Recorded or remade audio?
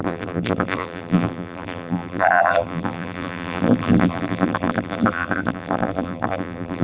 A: remade